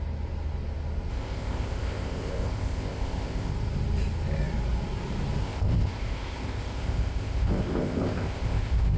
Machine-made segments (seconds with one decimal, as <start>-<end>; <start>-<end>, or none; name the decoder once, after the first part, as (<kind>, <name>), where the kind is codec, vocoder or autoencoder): 1.1-3.5 (codec, ZipCodec); 5.4-9.0